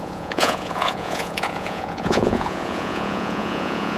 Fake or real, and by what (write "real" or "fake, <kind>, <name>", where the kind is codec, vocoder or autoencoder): fake, vocoder, Vocos